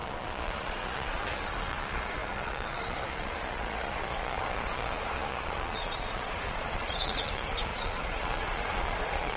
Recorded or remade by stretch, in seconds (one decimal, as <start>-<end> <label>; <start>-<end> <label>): 0.0-9.4 remade